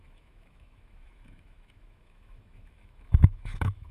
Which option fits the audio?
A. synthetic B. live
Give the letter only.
A